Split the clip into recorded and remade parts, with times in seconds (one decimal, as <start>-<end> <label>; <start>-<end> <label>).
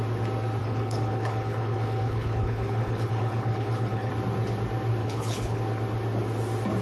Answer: 0.0-0.6 recorded; 0.6-4.1 remade; 4.1-5.0 recorded; 5.0-5.6 remade; 5.6-6.8 recorded